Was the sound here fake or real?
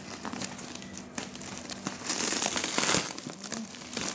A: fake